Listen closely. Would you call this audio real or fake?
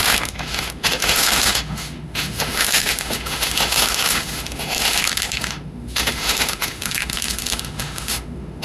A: fake